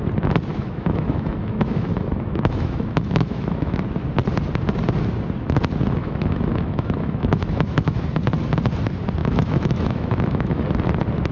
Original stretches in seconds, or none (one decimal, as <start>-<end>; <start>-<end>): 0.0-0.5; 3.8-6.0; 8.0-9.2; 10.6-11.3